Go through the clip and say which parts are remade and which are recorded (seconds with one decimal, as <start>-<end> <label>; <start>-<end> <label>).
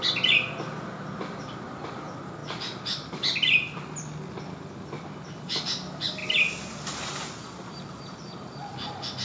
0.0-9.2 recorded